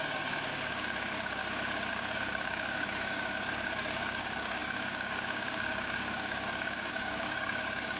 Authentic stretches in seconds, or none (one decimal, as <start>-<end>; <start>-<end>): 1.4-1.9

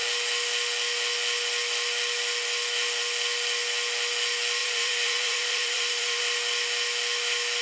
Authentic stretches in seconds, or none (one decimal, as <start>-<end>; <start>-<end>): 0.0-4.6; 6.2-7.6

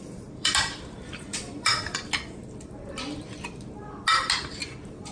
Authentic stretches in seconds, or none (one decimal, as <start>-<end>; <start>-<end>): 1.7-4.4

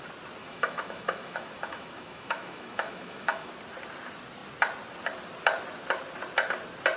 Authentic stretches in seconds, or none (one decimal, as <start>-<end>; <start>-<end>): 0.0-0.4; 3.5-7.0

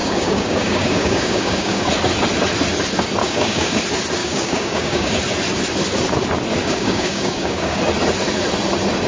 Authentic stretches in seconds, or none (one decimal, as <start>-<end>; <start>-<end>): 1.9-3.2; 3.8-4.2; 5.2-6.6; 7.8-9.1

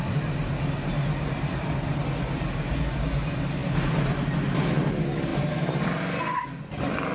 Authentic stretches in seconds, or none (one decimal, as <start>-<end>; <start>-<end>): 0.0-7.1

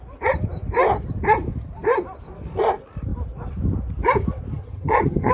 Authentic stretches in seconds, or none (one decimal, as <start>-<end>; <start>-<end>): 0.0-4.5

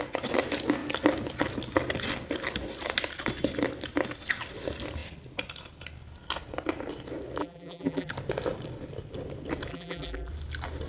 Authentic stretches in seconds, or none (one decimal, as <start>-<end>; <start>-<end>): 0.0-7.4; 8.1-9.7; 10.3-10.9